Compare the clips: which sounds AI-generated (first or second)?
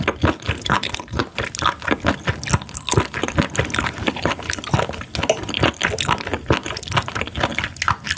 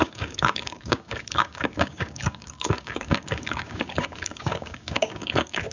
second